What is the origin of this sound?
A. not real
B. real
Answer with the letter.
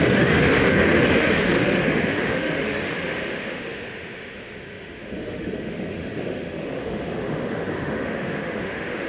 A